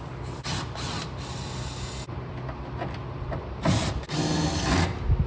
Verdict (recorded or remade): recorded